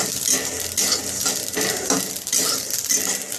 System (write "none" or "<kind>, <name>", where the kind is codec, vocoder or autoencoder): none